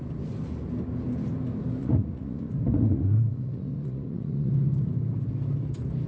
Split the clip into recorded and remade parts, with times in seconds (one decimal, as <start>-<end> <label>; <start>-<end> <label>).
0.0-1.8 recorded; 1.8-4.5 remade; 4.5-6.1 recorded